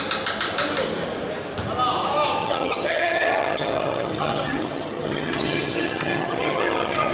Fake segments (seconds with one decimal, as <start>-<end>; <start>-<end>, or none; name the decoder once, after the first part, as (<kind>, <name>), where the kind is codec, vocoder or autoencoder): 2.4-7.1 (vocoder, HiFi-GAN)